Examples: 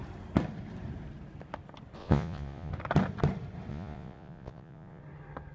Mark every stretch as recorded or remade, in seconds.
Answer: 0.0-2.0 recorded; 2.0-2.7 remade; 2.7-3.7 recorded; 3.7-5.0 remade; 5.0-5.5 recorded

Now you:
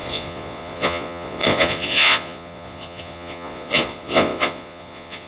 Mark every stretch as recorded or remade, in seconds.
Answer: 0.0-5.3 remade

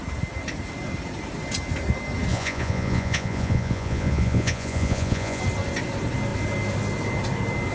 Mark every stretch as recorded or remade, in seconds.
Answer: 0.0-2.3 recorded; 2.3-5.4 remade; 5.4-7.7 recorded